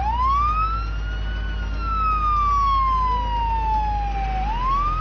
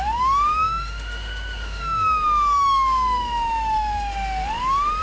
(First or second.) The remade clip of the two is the second